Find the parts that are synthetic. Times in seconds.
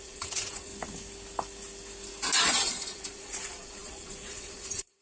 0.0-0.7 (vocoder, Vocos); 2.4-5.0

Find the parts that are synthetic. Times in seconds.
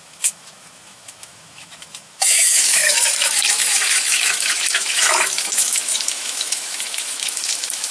0.0-7.9 (autoencoder, DAC-VAE)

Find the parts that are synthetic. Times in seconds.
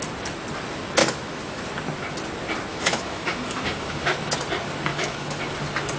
1.0-1.6 (autoencoder, DAC-VAE); 2.7-4.4; 4.9-5.4